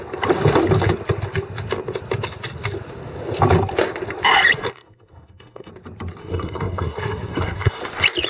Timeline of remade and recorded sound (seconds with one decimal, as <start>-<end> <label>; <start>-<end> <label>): 0.0-4.6 recorded; 4.6-5.7 remade; 5.7-6.2 recorded; 6.2-7.8 remade; 7.8-8.3 recorded